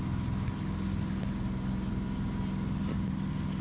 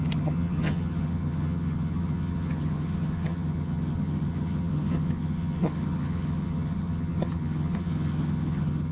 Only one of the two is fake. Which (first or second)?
second